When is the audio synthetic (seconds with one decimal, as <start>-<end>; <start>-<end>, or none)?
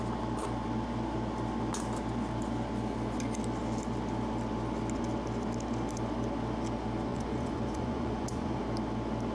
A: 7.1-8.6